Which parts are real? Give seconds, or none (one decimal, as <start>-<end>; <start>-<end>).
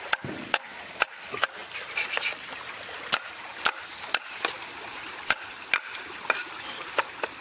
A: 0.0-7.4